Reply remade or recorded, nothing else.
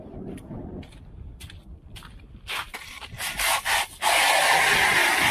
recorded